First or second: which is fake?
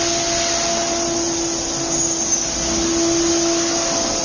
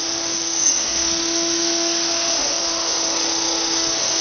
second